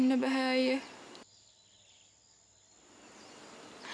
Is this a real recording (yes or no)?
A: yes